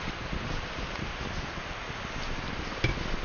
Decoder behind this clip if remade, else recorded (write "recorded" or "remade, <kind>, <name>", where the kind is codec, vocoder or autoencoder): recorded